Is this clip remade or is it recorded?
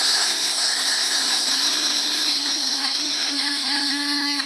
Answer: remade